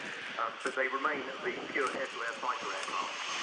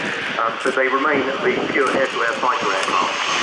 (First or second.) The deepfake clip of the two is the first